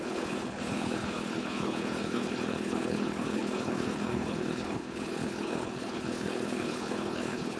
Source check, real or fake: fake